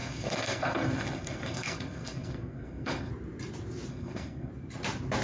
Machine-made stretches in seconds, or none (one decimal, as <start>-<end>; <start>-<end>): 0.0-3.1; 3.9-4.5